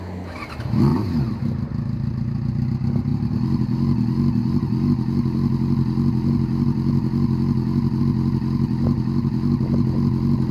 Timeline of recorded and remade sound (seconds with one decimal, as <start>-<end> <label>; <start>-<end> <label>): 0.0-10.5 recorded